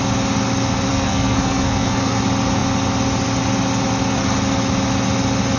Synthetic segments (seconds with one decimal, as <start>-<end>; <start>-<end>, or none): 0.9-2.2